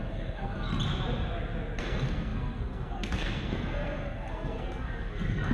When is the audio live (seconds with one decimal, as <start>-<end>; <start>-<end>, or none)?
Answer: 0.7-1.8